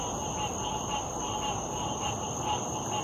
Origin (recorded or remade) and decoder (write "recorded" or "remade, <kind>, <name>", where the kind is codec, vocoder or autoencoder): recorded